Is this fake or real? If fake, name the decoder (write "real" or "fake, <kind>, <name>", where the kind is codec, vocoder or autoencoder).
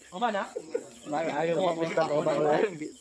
fake, vocoder, WaveNeXt